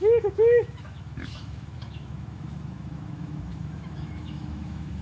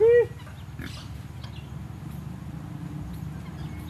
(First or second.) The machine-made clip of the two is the first